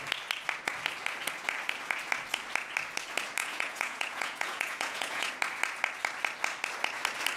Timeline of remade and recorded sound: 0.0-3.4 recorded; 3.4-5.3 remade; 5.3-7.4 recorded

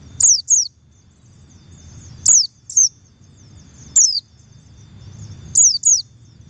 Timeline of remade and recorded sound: 0.0-2.8 recorded; 2.8-3.4 remade; 3.4-6.5 recorded

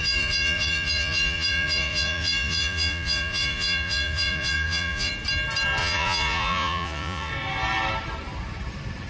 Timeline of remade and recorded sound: 0.0-5.1 remade; 5.1-5.8 recorded; 5.8-7.3 remade; 7.3-9.1 recorded

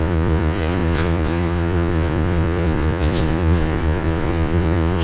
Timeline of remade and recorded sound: 0.0-5.0 remade